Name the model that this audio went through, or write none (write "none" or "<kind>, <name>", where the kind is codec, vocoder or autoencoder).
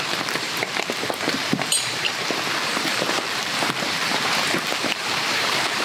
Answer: vocoder, BigVGAN v2